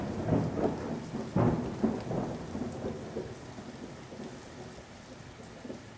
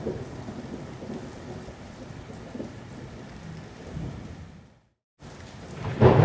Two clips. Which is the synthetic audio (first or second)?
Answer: second